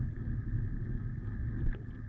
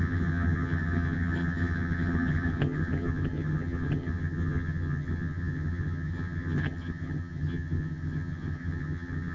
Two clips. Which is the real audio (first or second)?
first